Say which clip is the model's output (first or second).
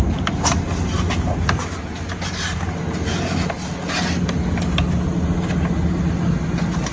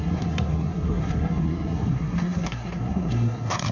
second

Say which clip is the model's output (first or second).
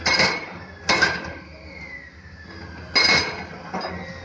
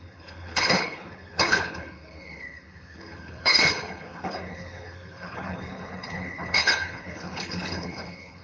second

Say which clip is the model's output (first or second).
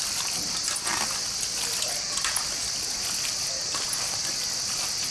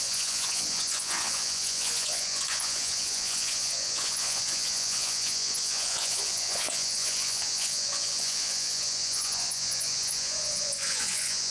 second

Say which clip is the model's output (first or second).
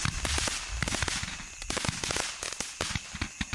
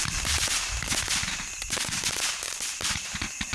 second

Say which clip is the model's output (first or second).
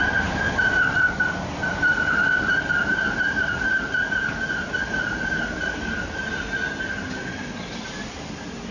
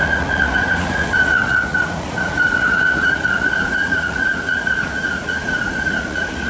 second